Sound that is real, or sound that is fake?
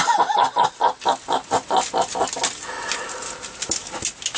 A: real